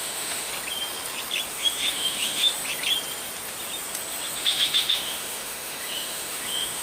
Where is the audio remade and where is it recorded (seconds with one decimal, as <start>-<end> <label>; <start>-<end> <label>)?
0.0-0.5 remade; 0.5-1.5 recorded; 1.5-2.5 remade; 2.5-4.4 recorded; 4.4-6.8 remade